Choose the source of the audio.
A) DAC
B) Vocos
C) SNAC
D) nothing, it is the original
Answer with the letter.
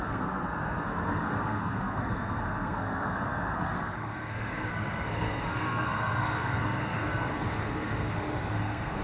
C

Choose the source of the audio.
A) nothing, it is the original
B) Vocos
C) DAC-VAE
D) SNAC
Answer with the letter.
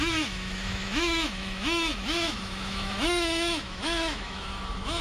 C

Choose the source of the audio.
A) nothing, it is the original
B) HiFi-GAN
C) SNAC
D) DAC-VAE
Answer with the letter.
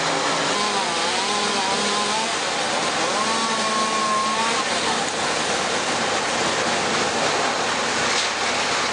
A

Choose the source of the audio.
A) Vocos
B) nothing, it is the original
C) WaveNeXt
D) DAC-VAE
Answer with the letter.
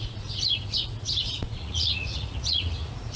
A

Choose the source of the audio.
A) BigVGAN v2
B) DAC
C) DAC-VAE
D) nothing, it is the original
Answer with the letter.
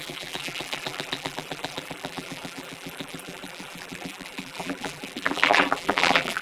A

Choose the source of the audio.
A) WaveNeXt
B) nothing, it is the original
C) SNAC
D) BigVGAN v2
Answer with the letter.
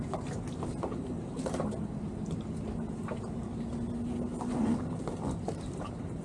B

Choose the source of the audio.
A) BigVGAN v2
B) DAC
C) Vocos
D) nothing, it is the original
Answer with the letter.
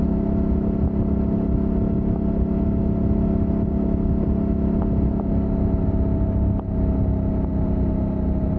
D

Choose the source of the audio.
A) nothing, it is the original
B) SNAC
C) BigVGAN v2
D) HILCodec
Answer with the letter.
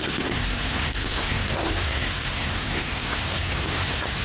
B